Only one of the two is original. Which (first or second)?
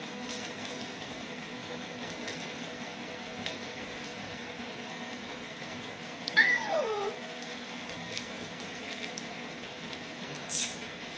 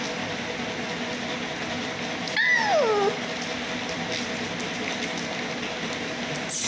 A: second